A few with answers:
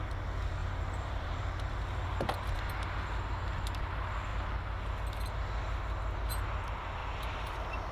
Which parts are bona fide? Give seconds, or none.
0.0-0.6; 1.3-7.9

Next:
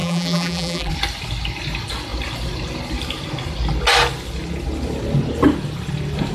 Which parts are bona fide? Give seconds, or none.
0.9-6.3